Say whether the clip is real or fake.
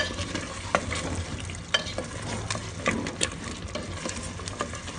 real